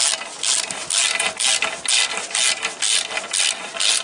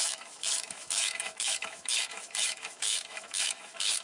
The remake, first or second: second